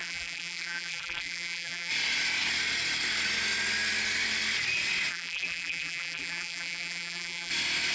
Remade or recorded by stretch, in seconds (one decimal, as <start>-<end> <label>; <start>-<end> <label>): 0.0-1.9 remade; 1.9-5.1 recorded; 5.1-7.5 remade; 7.5-7.9 recorded